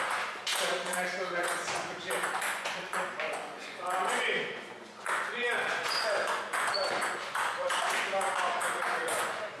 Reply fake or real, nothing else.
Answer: fake